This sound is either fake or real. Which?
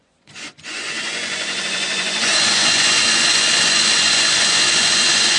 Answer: fake